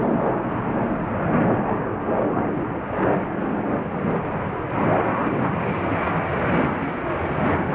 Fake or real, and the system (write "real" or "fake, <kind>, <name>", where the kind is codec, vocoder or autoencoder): real